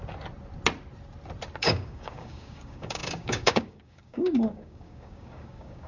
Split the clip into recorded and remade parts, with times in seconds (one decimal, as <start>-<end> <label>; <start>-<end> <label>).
0.0-1.6 recorded; 1.6-5.9 remade